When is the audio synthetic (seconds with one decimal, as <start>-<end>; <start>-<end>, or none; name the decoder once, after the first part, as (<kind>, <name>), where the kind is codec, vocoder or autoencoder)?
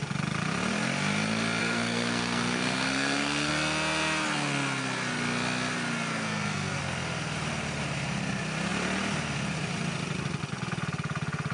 1.6-3.5 (codec, SNAC); 6.1-6.8